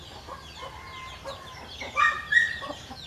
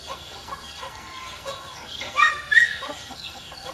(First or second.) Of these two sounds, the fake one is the second